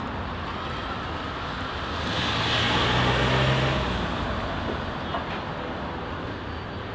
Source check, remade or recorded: recorded